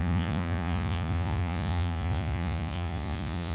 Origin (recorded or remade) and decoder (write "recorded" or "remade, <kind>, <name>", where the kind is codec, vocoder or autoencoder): remade, vocoder, Vocos